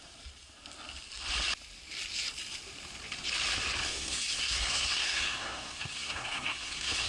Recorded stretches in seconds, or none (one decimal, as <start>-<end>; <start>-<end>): 0.0-3.8